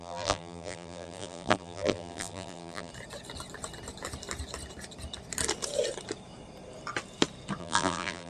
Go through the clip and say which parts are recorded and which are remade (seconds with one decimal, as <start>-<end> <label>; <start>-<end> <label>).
0.0-2.9 remade; 2.9-7.6 recorded; 7.6-8.3 remade